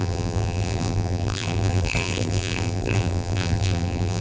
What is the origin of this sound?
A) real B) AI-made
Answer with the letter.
B